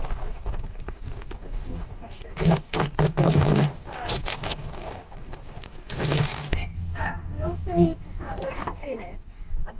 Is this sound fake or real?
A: fake